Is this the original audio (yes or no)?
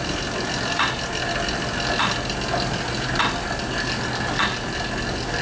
yes